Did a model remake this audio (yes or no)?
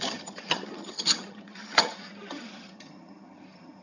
yes